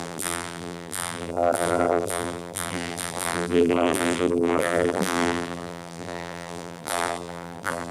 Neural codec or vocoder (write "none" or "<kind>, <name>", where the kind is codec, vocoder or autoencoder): vocoder, BigVGAN v2